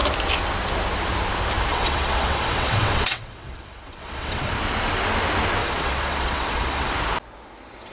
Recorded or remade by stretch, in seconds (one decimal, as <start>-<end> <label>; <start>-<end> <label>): 0.0-1.7 recorded; 1.7-4.5 remade; 4.5-5.6 recorded; 5.6-6.9 remade; 6.9-7.9 recorded